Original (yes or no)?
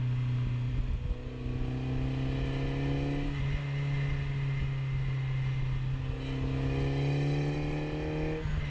yes